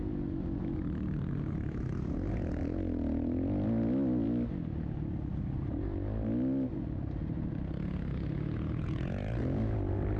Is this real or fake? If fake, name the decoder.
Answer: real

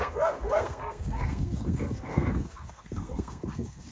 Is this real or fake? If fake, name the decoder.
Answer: fake, codec, SNAC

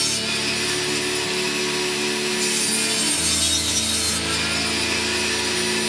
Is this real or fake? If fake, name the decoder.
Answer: real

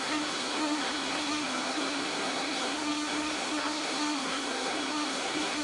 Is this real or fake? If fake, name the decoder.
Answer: fake, codec, SNAC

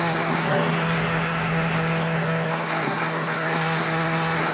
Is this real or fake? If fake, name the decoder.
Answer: fake, codec, SNAC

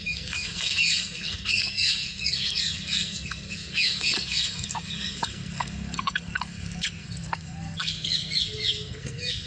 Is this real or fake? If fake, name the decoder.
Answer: fake, codec, SNAC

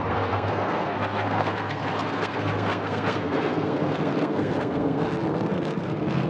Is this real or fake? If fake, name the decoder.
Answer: fake, codec, SNAC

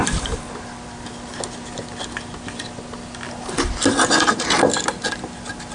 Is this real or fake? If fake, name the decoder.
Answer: real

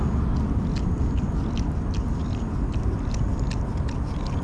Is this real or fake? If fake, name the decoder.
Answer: real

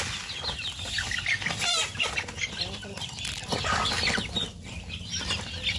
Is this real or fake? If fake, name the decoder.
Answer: real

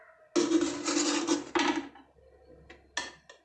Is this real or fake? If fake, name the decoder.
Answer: real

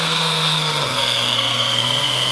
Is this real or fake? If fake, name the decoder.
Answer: fake, codec, SNAC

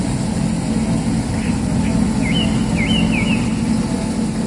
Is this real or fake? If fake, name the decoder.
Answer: real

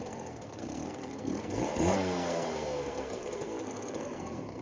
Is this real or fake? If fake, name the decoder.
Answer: fake, codec, SNAC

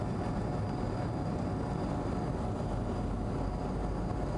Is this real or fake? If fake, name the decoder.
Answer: real